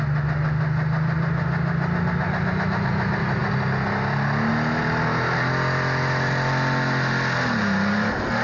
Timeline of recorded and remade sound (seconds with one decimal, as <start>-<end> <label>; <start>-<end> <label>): 0.0-8.4 recorded